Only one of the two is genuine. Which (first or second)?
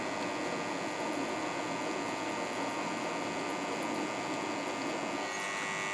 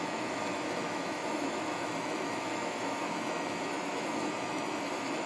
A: first